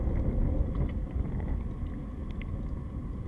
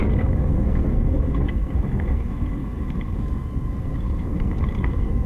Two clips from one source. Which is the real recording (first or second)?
first